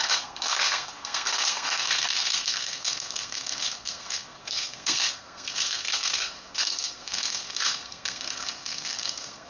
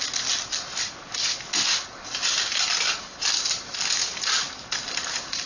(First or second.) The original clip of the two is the second